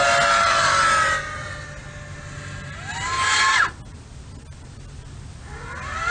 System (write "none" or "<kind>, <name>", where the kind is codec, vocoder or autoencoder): none